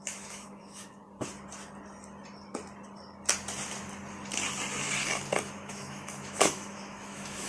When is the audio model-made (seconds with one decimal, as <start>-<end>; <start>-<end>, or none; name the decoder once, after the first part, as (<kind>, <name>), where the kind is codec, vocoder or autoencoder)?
0.0-1.0 (autoencoder, DAC-VAE); 5.4-7.5